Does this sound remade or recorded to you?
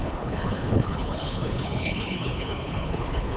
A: remade